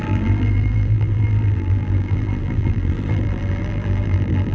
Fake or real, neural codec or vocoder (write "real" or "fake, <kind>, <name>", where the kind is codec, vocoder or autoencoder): fake, vocoder, BigVGAN v2